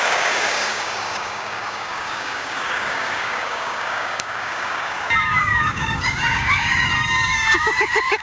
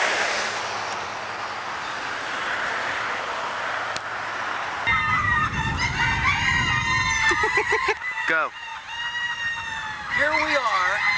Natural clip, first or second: second